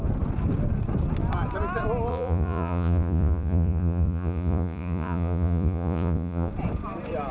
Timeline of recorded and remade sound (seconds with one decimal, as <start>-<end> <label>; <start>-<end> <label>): 0.0-2.1 recorded; 2.1-6.5 remade; 6.5-7.3 recorded